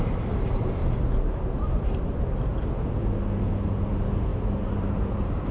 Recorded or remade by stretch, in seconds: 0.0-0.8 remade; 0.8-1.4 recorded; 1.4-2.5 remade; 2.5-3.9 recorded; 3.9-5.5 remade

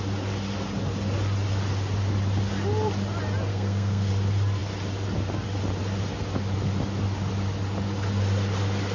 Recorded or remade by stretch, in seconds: 0.0-3.5 recorded; 3.5-4.1 remade; 4.1-8.9 recorded

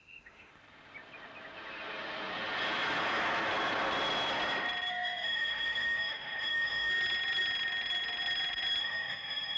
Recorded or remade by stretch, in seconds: 0.0-0.5 remade; 0.5-4.9 recorded; 4.9-6.9 remade; 6.9-8.8 recorded; 8.8-9.6 remade

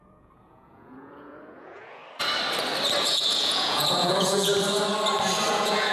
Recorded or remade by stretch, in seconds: 0.0-2.0 remade; 2.0-3.0 recorded; 3.0-4.5 remade; 4.5-5.5 recorded; 5.5-5.9 remade

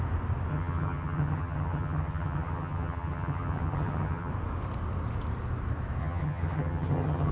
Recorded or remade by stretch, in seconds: 0.0-0.5 recorded; 0.5-4.3 remade; 4.3-6.0 recorded; 6.0-7.3 remade

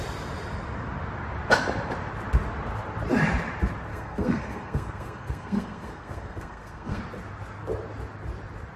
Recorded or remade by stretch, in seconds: 0.0-3.9 recorded; 3.9-7.0 remade; 7.0-8.8 recorded

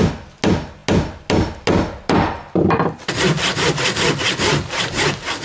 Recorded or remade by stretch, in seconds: 0.0-5.4 recorded